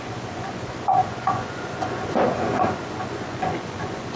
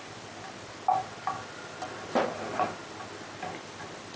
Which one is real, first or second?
second